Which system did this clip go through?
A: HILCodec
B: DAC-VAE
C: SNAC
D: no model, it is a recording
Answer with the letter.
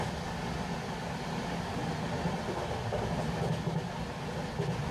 D